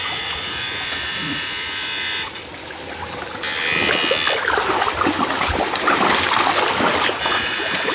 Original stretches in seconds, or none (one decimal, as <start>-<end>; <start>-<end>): 2.4-7.1